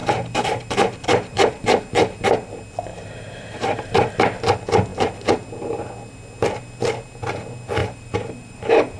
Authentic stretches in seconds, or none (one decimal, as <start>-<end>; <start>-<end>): 2.5-2.9; 4.1-7.8